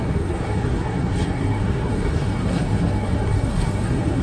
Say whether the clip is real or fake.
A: fake